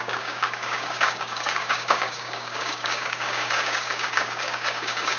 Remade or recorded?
remade